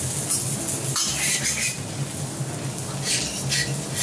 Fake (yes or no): no